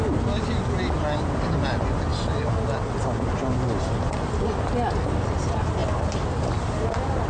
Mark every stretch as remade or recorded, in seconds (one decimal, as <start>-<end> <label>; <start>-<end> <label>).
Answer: 0.0-7.3 recorded